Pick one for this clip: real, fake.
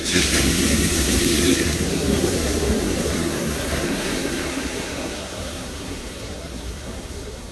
fake